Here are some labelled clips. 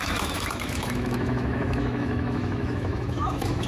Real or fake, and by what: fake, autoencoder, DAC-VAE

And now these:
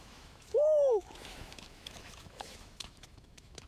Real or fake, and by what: fake, autoencoder, DAC-VAE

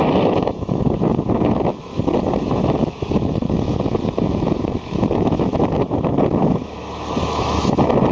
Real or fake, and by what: fake, autoencoder, DAC-VAE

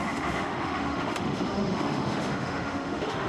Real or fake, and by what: fake, autoencoder, DAC-VAE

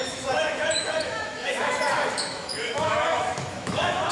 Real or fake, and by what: fake, autoencoder, DAC-VAE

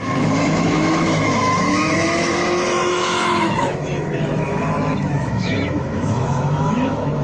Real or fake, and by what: fake, autoencoder, DAC-VAE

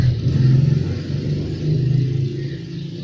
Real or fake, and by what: real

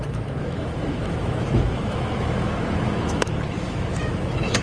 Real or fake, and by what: fake, autoencoder, DAC-VAE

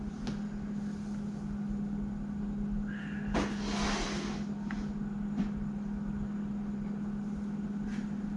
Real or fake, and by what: real